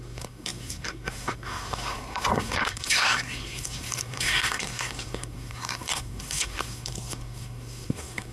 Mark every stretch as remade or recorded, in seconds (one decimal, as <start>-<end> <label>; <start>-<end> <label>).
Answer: 0.0-8.3 remade